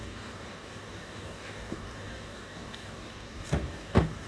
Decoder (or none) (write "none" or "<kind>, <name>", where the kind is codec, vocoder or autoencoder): codec, DAC